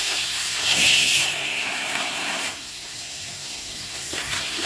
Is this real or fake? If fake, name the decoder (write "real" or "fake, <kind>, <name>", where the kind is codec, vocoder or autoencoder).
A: fake, codec, SNAC